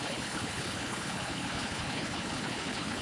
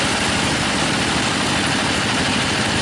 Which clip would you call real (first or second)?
second